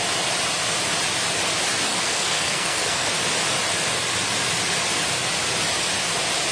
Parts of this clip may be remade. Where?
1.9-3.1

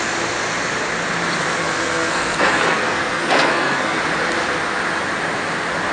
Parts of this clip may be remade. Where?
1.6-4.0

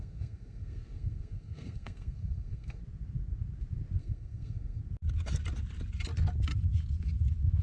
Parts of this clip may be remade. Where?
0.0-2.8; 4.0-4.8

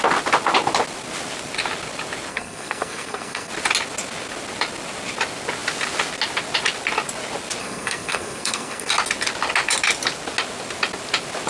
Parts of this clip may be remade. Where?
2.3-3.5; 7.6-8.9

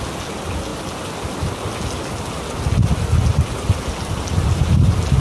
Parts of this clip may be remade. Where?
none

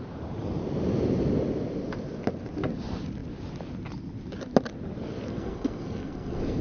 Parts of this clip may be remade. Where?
5.3-6.6